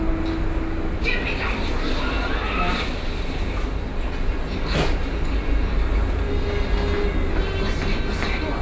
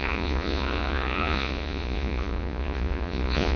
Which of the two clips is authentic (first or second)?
first